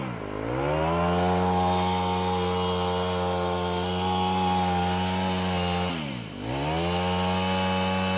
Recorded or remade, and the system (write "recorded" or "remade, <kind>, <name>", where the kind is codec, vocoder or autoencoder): recorded